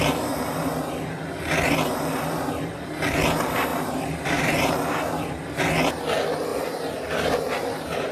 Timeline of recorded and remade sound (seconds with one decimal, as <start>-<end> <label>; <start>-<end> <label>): 0.0-3.7 recorded; 3.7-4.7 remade; 4.7-6.5 recorded; 6.5-8.1 remade